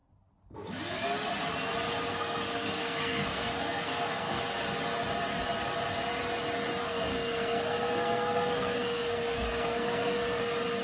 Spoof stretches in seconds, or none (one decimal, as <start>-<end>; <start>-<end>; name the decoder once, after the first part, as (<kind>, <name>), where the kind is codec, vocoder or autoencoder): 2.1-4.4 (codec, SNAC); 6.8-10.4